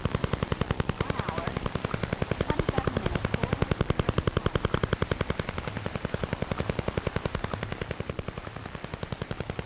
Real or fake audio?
fake